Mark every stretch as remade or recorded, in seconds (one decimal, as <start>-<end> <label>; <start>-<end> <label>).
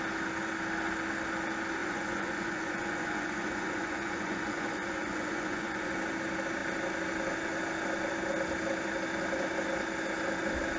0.0-1.8 recorded; 1.8-5.9 remade; 5.9-10.8 recorded